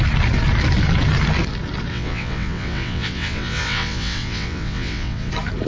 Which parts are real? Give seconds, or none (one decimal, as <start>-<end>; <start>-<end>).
0.0-1.9; 5.3-5.7